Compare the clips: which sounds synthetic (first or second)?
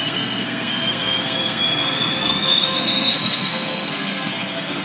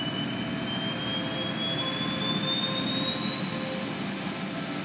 first